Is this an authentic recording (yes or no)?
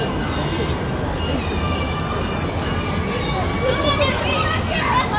yes